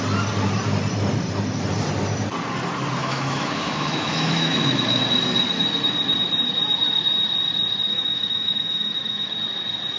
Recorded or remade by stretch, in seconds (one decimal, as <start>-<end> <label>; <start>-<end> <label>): 0.0-3.0 recorded; 3.0-5.0 remade; 5.0-7.9 recorded; 7.9-9.3 remade; 9.3-10.0 recorded